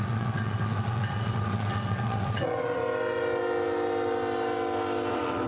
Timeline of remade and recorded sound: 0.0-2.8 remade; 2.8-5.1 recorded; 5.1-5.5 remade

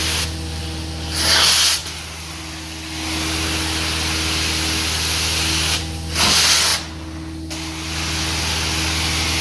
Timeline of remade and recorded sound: 0.0-9.4 recorded

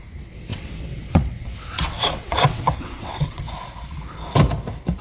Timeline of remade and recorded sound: 0.0-0.5 recorded; 0.5-3.5 remade; 3.5-5.0 recorded